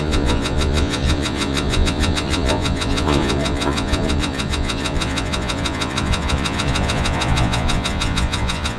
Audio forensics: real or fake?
fake